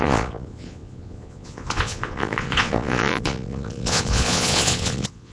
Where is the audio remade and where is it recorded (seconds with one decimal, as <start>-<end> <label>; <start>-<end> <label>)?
0.0-5.3 remade